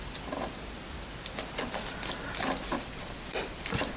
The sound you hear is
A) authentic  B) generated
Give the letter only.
A